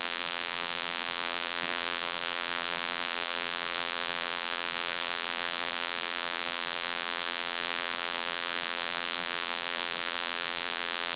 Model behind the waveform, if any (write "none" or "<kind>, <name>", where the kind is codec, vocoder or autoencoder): vocoder, BigVGAN v2